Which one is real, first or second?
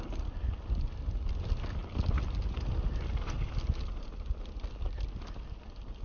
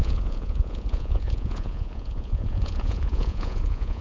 first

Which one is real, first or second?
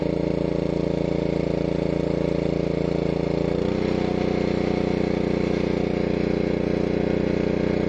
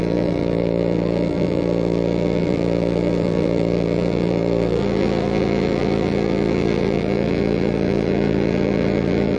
first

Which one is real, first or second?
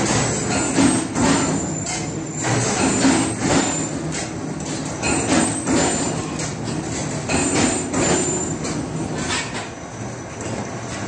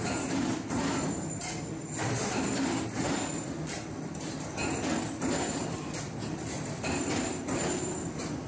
first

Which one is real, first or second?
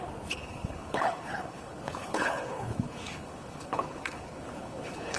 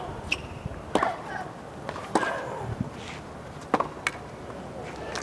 second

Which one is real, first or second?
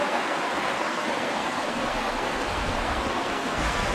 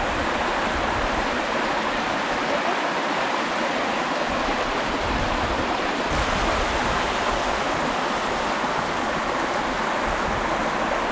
second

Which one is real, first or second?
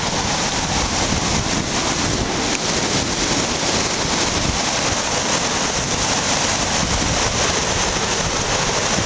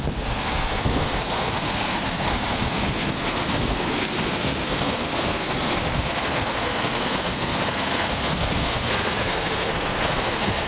first